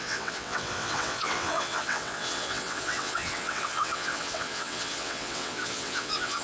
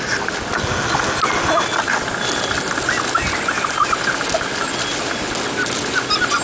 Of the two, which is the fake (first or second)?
first